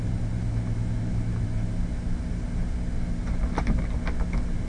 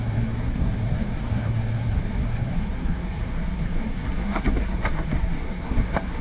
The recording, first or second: first